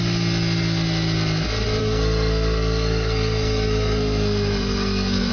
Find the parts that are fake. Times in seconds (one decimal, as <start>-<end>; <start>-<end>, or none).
1.8-5.3